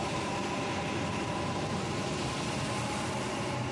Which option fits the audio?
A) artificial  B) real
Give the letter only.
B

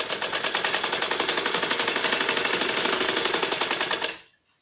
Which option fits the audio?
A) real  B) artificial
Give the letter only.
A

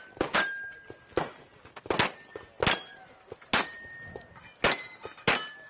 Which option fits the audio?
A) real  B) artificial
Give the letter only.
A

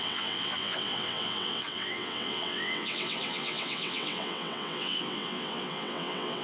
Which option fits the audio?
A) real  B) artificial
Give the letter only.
B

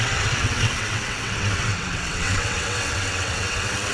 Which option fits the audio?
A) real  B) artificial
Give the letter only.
B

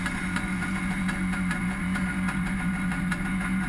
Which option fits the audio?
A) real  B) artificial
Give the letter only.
B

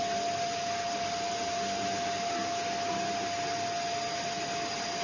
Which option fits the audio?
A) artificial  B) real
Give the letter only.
B